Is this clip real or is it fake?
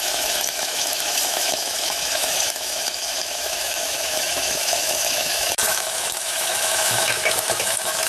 fake